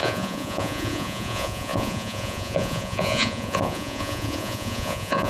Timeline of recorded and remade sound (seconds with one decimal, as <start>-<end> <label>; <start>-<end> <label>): 0.0-5.3 remade

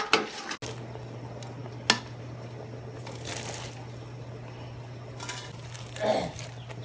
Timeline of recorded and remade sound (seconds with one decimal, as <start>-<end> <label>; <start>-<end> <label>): 0.0-6.8 recorded

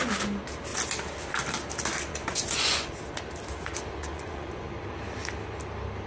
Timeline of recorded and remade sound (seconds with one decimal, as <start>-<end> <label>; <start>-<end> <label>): 0.0-2.1 recorded; 2.1-2.9 remade; 2.9-4.0 recorded; 4.0-4.7 remade; 4.7-6.1 recorded

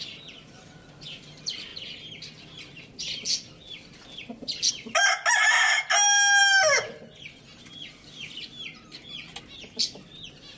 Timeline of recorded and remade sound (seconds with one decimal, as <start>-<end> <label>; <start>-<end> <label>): 0.0-10.6 recorded

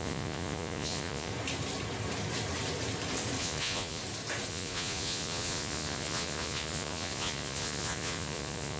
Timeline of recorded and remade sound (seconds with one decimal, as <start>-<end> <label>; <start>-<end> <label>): 0.0-1.3 remade; 1.3-3.4 recorded; 3.4-4.0 remade; 4.0-4.5 recorded; 4.5-8.8 remade

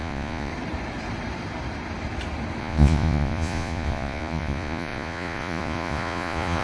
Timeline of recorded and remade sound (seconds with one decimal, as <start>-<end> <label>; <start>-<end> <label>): 0.0-0.5 remade; 0.5-2.6 recorded; 2.6-6.6 remade

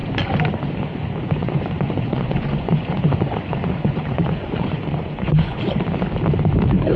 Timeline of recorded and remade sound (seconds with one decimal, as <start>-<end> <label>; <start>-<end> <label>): 0.0-1.4 recorded; 1.4-5.6 remade; 5.6-7.0 recorded

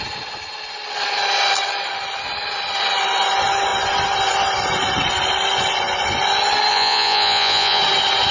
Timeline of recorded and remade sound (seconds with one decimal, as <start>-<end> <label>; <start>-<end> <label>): 0.0-6.7 recorded; 6.7-7.8 remade; 7.8-8.3 recorded